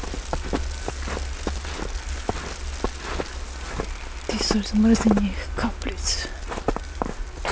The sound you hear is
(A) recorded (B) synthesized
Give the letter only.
A